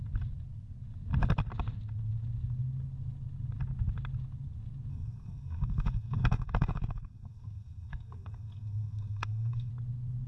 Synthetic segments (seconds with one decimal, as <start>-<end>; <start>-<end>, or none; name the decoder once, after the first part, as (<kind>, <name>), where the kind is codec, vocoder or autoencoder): 4.9-9.7 (codec, SNAC)